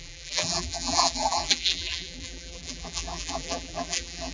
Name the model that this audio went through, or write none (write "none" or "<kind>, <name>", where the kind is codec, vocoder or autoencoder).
vocoder, BigVGAN v2